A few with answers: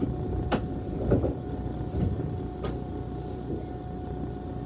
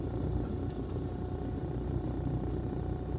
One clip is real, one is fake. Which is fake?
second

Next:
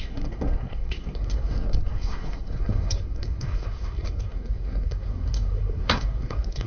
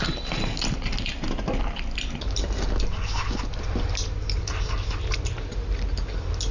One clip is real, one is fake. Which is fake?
first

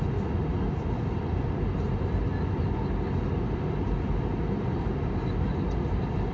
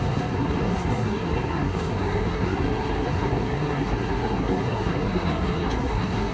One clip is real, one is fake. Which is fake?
second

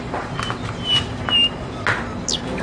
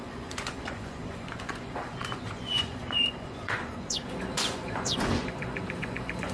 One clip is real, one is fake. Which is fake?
second